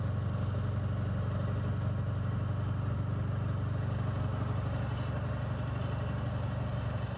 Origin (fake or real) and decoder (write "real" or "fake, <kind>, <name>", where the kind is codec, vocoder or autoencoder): real